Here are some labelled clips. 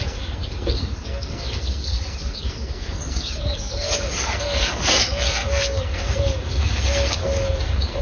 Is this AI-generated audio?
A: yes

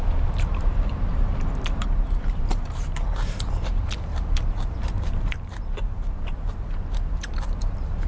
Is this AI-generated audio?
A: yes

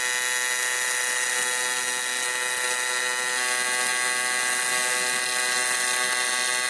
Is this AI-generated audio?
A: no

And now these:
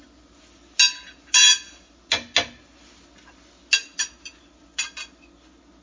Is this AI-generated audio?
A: no